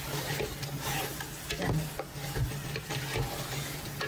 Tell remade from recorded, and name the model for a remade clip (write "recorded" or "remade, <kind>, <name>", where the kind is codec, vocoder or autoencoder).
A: recorded